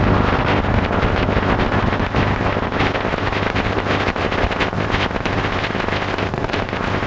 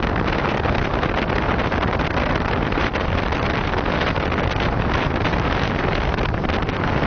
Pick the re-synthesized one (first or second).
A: first